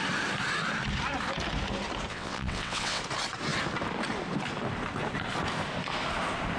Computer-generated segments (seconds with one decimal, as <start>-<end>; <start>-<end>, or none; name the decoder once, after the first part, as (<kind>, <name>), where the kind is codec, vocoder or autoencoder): 2.1-3.0 (vocoder, WaveNeXt)